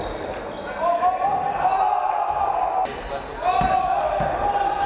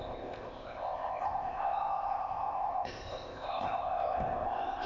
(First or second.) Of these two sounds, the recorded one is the first